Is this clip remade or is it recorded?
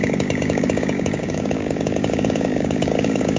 remade